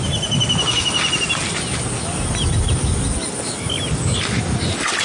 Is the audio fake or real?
real